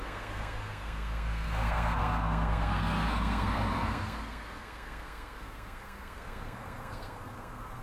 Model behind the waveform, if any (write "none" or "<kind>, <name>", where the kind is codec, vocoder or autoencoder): codec, SNAC